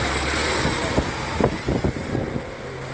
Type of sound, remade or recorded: recorded